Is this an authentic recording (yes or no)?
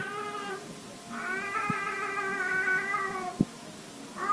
yes